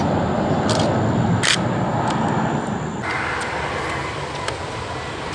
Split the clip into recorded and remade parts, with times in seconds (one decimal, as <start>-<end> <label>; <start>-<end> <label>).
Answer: 0.0-5.3 recorded